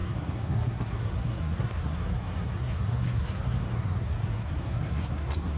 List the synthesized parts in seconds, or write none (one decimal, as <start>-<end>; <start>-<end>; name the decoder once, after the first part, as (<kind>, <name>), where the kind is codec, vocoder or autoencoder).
0.0-5.6 (codec, SNAC)